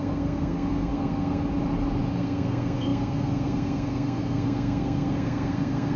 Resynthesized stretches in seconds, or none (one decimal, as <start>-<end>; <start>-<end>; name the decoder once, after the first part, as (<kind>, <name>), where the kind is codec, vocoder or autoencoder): 0.0-1.4 (codec, SNAC); 2.1-6.0